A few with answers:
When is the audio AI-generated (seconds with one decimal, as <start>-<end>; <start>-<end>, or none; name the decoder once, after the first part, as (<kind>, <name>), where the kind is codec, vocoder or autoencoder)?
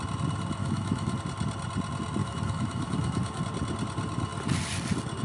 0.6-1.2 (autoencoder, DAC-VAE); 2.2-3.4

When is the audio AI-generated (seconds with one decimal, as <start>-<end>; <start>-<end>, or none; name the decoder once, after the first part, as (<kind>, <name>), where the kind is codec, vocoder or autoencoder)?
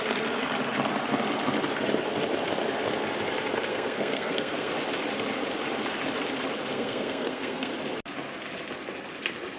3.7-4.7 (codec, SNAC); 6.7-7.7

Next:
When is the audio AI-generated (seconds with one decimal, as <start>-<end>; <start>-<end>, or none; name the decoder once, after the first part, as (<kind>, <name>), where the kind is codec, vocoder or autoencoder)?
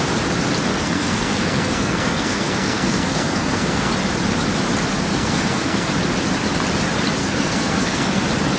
0.7-3.9 (codec, SNAC); 5.1-5.9; 7.2-8.2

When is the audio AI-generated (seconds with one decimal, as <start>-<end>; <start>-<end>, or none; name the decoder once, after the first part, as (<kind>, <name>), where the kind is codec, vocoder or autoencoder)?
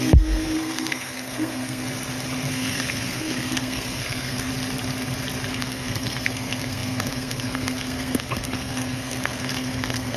0.0-1.8 (codec, SNAC); 2.5-4.5; 5.5-10.2